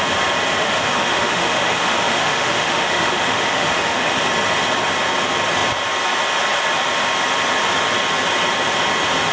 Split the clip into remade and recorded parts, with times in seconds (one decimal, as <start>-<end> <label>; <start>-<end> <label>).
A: 0.0-0.6 recorded; 0.6-4.2 remade; 4.2-9.3 recorded